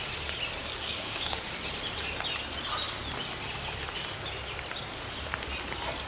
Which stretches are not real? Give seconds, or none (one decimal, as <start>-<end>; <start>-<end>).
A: 0.6-1.4